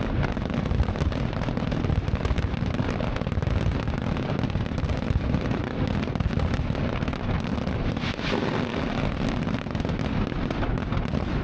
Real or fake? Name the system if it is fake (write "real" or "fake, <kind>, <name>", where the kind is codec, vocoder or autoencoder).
real